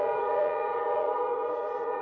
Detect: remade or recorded remade